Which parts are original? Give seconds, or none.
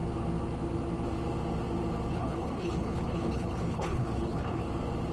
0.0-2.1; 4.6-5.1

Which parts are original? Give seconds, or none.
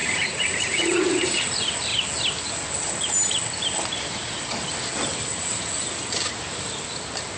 1.4-7.4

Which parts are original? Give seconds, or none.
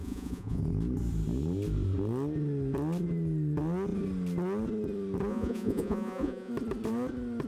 0.6-5.3; 6.5-7.5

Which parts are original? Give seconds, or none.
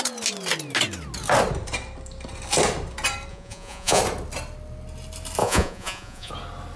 0.0-3.3; 4.0-5.4; 6.3-6.8